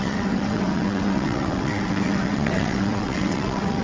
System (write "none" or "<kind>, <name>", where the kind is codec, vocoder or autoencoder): vocoder, WaveNeXt